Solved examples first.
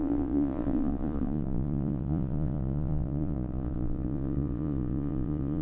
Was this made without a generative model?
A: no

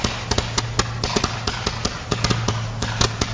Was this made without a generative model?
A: yes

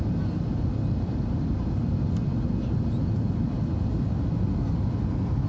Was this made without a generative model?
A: yes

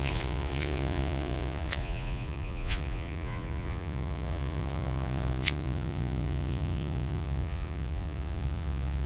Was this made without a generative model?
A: no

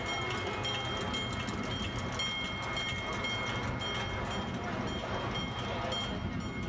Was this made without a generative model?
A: yes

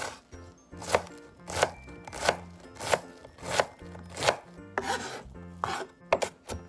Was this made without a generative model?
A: yes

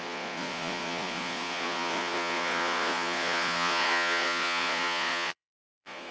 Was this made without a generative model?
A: no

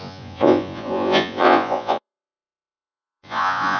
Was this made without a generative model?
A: no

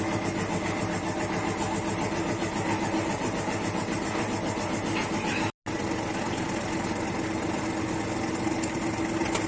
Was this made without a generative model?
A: yes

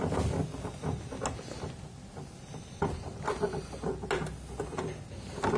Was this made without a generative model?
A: yes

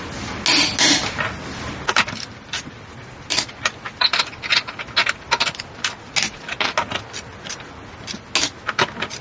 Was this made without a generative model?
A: yes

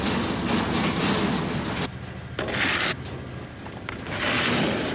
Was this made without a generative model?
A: yes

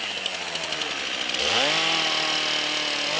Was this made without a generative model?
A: yes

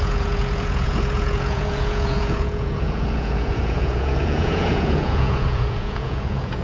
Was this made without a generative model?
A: no